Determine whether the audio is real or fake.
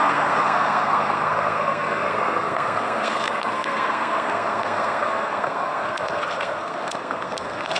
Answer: fake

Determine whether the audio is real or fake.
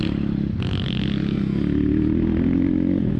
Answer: real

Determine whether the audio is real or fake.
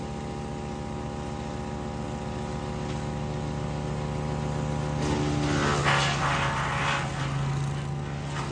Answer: real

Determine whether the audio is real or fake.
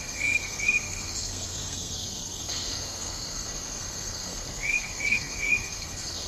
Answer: fake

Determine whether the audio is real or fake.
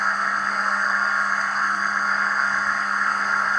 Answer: fake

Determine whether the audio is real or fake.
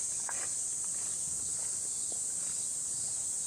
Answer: real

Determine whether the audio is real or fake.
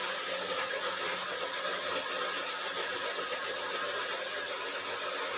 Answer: real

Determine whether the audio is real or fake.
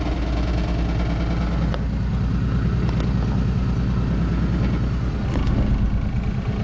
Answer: real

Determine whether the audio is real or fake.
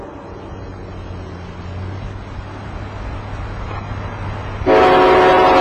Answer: real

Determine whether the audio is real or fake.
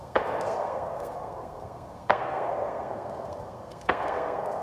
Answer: fake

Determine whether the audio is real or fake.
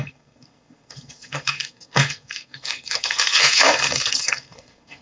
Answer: fake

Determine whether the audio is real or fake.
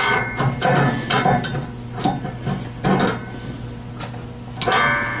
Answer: real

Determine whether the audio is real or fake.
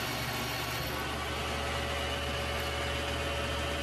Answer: real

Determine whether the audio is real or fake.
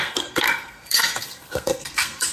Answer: fake